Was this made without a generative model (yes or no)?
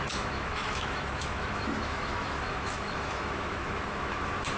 no